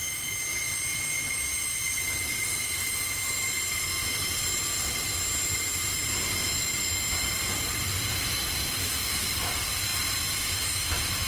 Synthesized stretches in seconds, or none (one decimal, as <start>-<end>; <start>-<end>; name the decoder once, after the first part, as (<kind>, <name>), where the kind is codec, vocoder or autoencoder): none